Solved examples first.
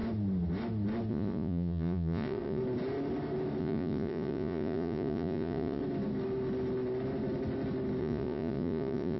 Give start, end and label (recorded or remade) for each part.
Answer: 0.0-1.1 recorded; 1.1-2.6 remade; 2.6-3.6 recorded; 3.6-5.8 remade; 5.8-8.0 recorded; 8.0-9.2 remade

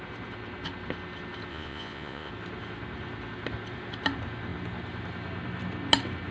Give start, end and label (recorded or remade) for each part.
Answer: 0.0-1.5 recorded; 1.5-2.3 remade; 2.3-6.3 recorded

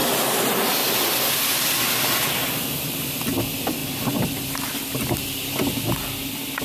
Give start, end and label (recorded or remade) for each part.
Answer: 0.0-6.6 recorded